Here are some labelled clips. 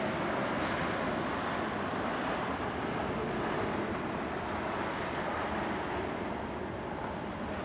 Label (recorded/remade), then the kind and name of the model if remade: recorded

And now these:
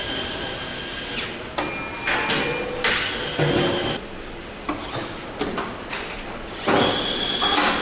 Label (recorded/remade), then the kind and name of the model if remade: recorded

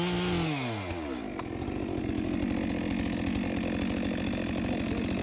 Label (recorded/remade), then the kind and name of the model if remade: recorded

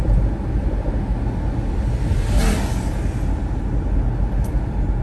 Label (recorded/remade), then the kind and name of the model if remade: recorded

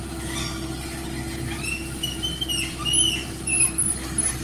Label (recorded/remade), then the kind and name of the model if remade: recorded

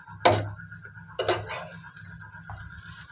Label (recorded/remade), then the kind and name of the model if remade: recorded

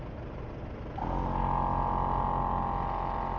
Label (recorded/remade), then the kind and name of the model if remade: recorded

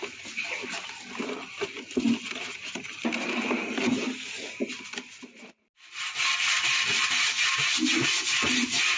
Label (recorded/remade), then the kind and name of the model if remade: recorded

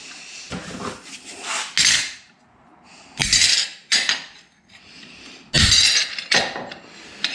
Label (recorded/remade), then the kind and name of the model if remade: recorded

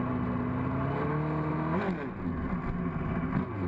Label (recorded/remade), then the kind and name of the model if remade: recorded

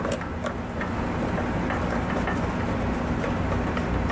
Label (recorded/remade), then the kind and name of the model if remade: recorded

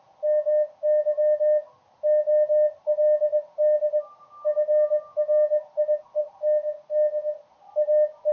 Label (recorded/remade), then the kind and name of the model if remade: recorded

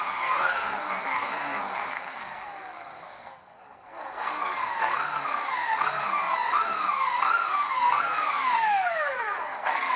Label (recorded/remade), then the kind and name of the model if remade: remade, codec, SNAC